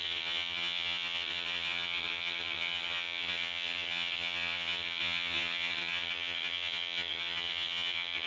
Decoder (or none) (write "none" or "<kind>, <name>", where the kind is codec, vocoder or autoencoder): vocoder, HiFi-GAN